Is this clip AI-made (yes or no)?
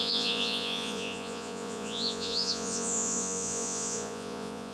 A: yes